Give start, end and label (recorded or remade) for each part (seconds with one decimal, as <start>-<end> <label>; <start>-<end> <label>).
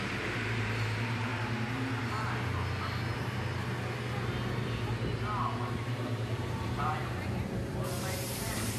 0.0-1.3 remade; 1.3-5.7 recorded; 5.7-7.0 remade; 7.0-8.2 recorded; 8.2-8.8 remade